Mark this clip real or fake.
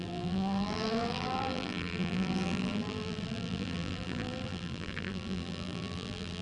fake